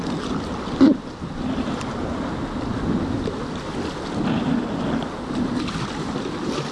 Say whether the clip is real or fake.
real